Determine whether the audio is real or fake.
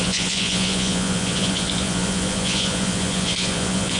fake